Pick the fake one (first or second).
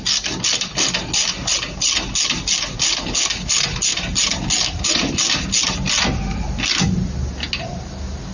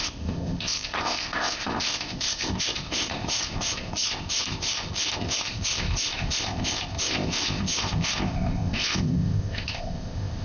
second